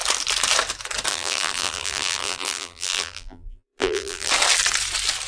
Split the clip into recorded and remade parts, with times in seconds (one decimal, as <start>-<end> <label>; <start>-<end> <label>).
0.0-1.1 recorded; 1.1-4.3 remade; 4.3-5.3 recorded